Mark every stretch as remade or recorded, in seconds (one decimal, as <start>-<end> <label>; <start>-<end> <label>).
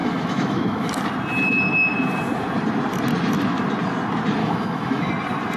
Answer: 0.0-0.9 remade; 0.9-4.4 recorded; 4.4-5.1 remade; 5.1-5.6 recorded